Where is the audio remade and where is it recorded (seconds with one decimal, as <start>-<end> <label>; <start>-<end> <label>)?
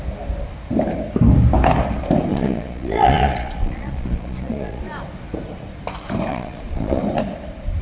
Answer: 0.0-2.3 recorded; 2.3-4.8 remade; 4.8-6.3 recorded; 6.3-7.0 remade; 7.0-7.8 recorded